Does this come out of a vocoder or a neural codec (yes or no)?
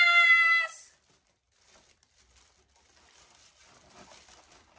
no